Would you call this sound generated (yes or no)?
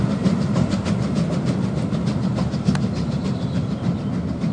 no